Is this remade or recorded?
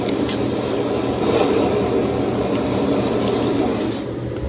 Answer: recorded